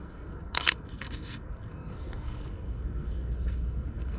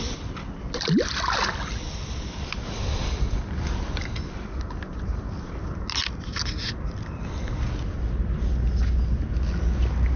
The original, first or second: second